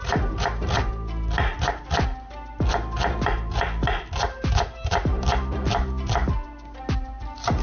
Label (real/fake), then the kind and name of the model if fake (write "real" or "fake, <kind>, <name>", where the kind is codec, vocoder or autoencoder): real